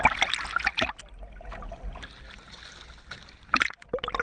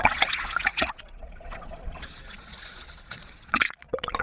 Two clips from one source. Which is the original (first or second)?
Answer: first